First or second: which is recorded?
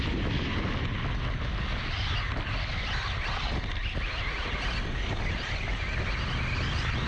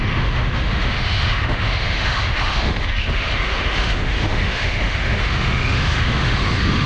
first